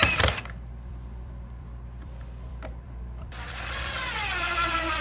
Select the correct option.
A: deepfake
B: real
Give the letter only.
A